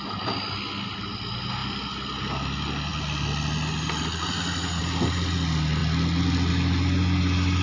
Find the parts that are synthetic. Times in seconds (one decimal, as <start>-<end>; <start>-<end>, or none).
none